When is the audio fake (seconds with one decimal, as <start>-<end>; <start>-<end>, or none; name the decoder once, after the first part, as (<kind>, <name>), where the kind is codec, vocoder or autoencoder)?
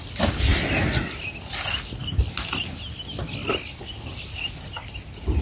none